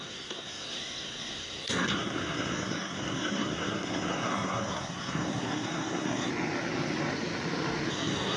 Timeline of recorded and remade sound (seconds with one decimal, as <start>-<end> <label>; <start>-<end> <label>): 0.0-6.3 remade; 6.3-7.9 recorded; 7.9-8.4 remade